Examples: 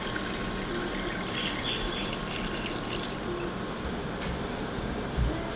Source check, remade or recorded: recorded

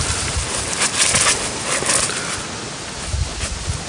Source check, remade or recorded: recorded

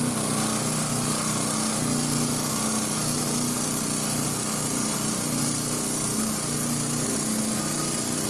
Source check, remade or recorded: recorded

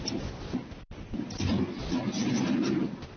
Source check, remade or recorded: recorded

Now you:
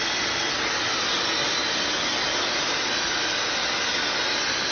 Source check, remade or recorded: recorded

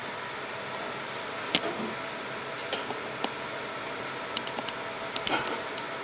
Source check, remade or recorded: recorded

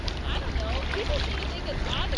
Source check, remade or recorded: recorded